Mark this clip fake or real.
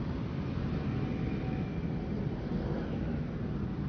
real